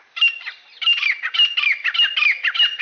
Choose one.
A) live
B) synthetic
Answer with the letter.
A